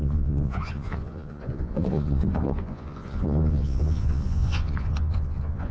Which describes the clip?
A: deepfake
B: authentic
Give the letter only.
A